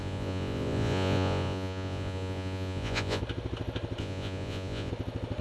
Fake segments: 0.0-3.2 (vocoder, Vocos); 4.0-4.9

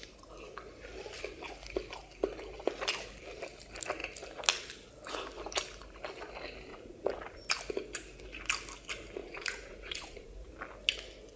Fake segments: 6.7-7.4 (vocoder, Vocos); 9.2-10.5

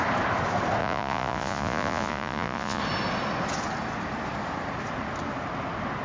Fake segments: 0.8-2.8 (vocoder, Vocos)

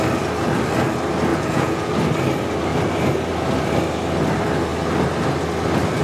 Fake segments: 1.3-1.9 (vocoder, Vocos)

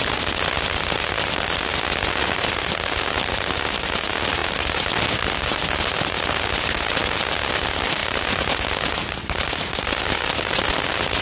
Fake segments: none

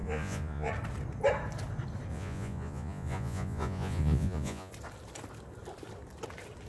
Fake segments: 0.0-0.7 (vocoder, Vocos); 2.1-4.7

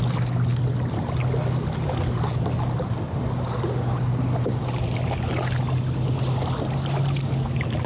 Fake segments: none